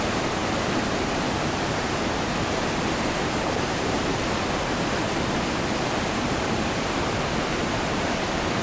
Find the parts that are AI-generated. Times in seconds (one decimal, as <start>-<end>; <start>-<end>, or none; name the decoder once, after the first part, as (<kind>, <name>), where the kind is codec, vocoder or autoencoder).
0.0-4.1 (vocoder, BigVGAN v2); 5.6-8.6